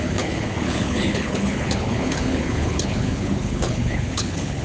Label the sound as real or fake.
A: fake